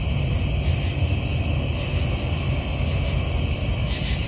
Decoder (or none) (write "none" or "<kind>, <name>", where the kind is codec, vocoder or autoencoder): none